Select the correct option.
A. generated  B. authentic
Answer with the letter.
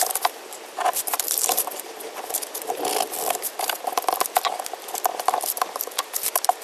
A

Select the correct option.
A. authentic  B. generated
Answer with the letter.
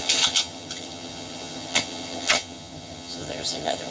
B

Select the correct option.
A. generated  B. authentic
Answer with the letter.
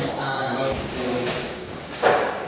A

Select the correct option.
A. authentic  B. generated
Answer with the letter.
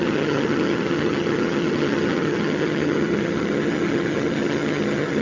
B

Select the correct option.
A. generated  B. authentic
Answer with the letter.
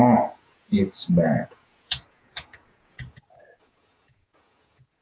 A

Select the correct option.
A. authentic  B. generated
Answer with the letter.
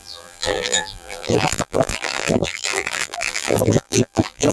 B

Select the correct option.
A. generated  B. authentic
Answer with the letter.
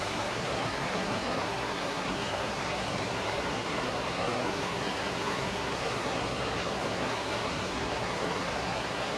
A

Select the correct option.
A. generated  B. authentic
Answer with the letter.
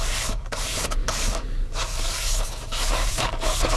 A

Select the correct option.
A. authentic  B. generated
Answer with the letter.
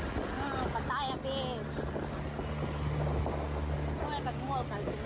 A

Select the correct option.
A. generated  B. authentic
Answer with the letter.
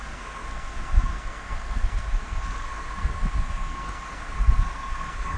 A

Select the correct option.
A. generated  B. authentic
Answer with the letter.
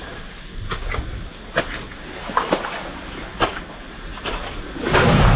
B